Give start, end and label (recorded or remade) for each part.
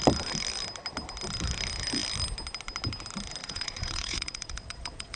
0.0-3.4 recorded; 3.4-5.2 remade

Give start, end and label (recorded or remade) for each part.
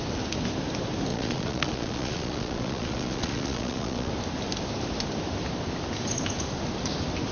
0.0-1.1 recorded; 1.1-4.1 remade; 4.1-7.3 recorded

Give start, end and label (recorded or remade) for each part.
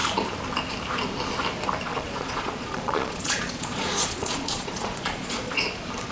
0.0-1.9 recorded; 1.9-5.6 remade; 5.6-6.1 recorded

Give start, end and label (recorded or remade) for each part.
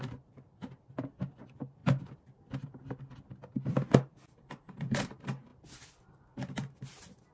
0.0-7.3 recorded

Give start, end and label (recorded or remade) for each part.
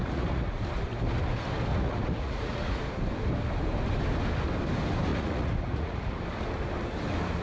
0.0-0.6 remade; 0.6-1.7 recorded; 1.7-2.8 remade; 2.8-5.1 recorded; 5.1-6.2 remade; 6.2-7.4 recorded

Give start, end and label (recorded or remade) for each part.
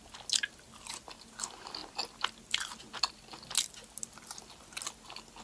0.0-5.4 recorded